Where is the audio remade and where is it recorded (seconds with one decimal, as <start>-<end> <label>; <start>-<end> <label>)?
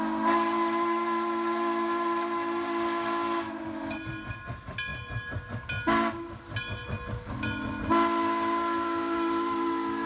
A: 0.0-10.1 recorded